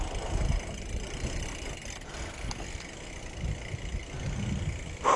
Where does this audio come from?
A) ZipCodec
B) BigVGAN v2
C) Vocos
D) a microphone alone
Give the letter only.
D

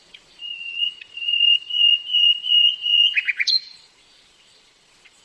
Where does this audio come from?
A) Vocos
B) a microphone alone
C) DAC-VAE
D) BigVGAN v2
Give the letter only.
A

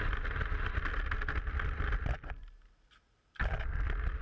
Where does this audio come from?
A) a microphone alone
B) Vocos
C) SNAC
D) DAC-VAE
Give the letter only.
A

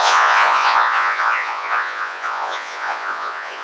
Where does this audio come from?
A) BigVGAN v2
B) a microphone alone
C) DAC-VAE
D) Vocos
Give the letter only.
D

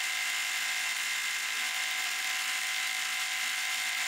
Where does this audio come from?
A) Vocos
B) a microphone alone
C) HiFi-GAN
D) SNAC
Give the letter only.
B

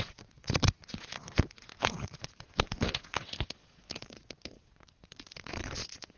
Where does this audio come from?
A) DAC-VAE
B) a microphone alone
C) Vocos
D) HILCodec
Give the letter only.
C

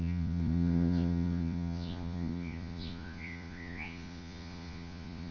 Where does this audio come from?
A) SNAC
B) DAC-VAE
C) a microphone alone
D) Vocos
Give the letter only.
D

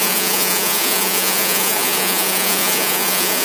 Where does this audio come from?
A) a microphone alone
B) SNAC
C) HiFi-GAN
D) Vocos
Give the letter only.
D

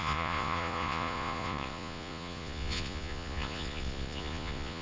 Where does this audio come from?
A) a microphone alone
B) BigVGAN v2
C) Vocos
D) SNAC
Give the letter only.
C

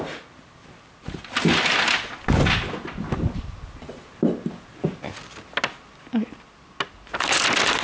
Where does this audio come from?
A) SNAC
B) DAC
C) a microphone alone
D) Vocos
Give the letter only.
C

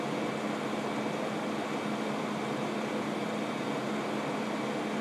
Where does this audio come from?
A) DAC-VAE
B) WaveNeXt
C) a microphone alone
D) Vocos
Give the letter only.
C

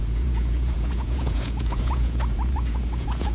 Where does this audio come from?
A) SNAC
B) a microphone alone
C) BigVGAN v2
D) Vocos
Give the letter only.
D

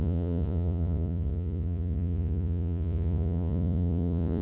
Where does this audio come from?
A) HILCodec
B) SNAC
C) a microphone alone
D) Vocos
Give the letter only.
D